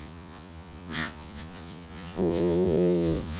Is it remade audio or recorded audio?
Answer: remade